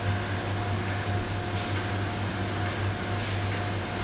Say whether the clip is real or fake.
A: real